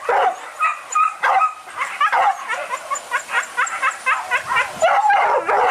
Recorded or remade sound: recorded